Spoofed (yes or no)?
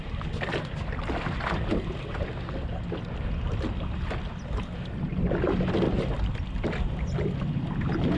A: no